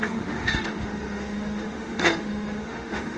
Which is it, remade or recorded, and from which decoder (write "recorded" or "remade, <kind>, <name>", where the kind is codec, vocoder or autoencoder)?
remade, autoencoder, DAC-VAE